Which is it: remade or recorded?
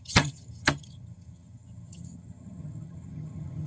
remade